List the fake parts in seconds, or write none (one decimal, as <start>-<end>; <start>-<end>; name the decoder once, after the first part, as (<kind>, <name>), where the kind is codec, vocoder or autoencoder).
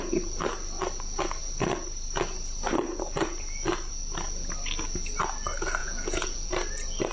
5.8-6.5 (vocoder, Vocos)